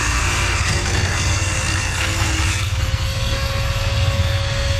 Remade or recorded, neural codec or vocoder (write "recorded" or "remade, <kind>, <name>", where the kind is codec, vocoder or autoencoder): remade, codec, SNAC